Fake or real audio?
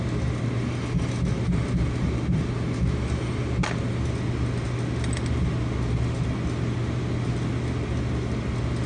real